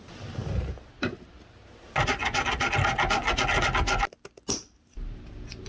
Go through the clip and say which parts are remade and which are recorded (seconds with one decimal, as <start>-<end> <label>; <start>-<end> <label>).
0.0-0.4 recorded; 0.4-0.9 remade; 0.9-5.7 recorded